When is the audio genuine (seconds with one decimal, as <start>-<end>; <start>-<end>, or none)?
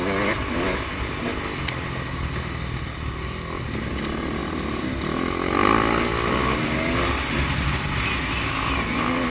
0.0-9.3